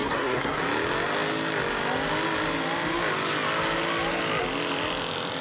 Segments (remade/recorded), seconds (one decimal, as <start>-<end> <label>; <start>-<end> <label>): 0.0-0.6 remade; 0.6-5.4 recorded